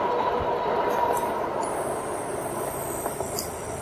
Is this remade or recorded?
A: recorded